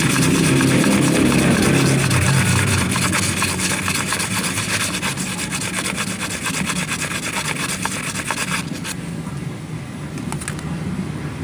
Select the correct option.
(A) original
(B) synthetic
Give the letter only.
A